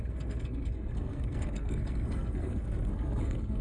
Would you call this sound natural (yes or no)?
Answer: no